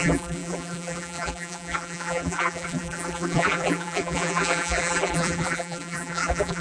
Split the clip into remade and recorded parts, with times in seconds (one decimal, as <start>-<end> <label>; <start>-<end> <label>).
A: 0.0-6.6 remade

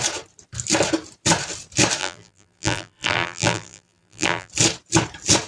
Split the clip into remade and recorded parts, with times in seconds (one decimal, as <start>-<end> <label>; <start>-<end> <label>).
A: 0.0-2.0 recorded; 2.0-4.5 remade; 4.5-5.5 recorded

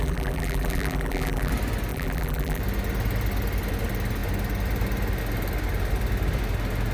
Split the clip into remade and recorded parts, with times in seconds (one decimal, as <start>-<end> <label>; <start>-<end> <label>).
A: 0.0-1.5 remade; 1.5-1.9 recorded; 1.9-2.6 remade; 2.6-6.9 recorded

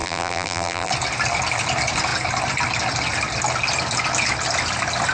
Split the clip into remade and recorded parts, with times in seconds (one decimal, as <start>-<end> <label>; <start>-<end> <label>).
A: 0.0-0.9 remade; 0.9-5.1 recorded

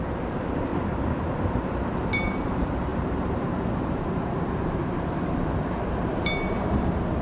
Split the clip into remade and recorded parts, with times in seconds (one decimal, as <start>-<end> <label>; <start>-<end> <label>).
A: 0.0-0.7 remade; 0.7-1.2 recorded; 1.2-7.2 remade

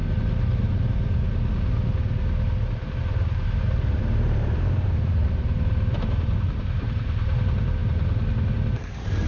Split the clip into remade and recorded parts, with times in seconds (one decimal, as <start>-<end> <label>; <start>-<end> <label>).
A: 0.0-3.0 recorded; 3.0-7.8 remade; 7.8-8.5 recorded; 8.5-9.3 remade

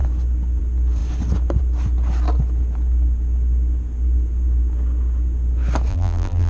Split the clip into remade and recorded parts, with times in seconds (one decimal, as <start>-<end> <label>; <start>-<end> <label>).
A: 0.0-5.9 recorded; 5.9-6.5 remade

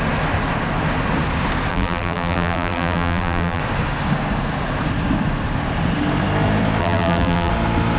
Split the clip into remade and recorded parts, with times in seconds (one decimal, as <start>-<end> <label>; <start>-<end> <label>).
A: 0.0-1.7 recorded; 1.7-3.6 remade; 3.6-6.8 recorded; 6.8-7.5 remade; 7.5-8.0 recorded